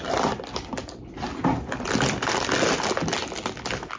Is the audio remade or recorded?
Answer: recorded